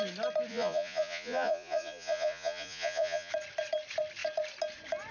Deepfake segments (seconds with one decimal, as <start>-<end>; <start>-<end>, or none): 0.5-3.3